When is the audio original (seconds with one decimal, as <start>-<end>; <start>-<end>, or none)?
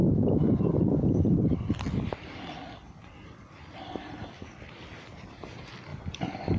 1.8-6.6